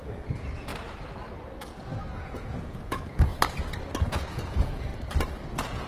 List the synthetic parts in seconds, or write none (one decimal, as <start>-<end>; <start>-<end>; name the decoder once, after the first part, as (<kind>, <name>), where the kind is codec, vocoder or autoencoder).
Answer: 0.0-0.7 (vocoder, Vocos); 2.1-3.3; 4.1-4.9; 5.5-5.9